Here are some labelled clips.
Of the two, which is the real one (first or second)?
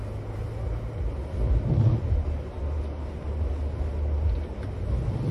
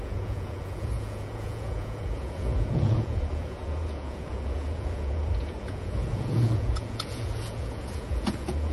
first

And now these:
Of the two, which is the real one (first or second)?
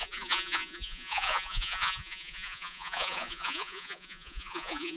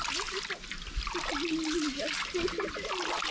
second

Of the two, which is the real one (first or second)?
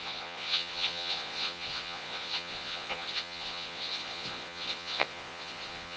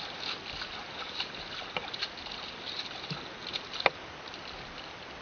second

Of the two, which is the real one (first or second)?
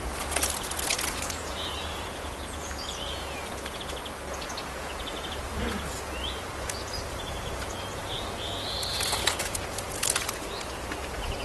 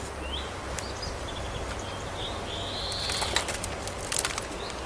second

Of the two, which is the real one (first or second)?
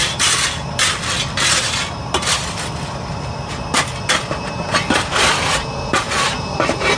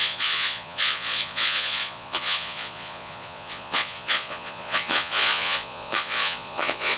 first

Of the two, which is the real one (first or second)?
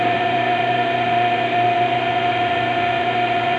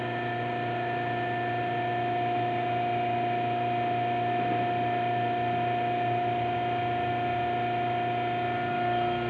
second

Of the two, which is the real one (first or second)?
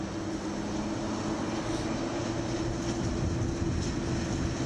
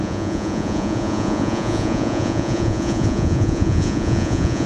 first